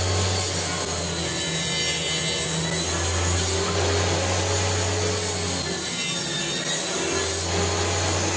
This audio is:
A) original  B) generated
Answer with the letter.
A